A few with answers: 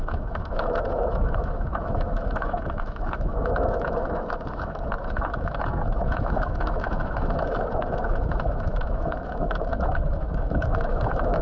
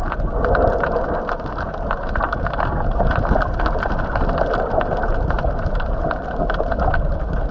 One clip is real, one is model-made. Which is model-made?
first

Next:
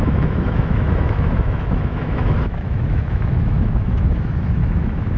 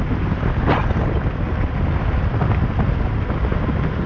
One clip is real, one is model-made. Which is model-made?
first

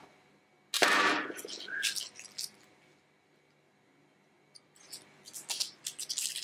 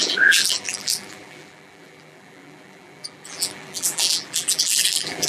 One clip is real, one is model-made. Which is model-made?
second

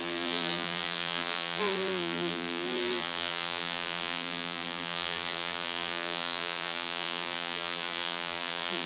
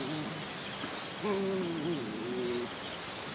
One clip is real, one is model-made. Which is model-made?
first